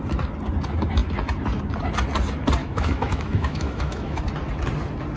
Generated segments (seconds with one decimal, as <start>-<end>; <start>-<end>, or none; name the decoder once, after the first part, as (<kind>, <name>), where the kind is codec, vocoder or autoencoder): 2.6-4.2 (autoencoder, DAC-VAE)